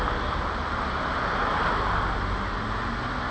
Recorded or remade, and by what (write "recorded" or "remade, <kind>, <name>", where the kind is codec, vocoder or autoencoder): recorded